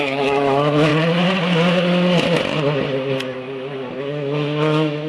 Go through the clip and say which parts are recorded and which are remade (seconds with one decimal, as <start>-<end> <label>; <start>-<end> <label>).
0.0-0.9 remade; 0.9-4.0 recorded; 4.0-5.1 remade